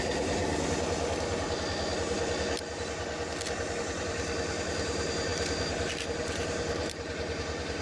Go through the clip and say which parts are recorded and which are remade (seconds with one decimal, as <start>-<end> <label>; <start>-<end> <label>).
0.0-0.4 remade; 0.4-3.8 recorded; 3.8-5.3 remade; 5.3-6.0 recorded; 6.0-7.8 remade